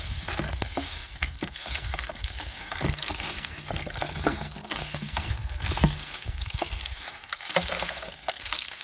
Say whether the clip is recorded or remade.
remade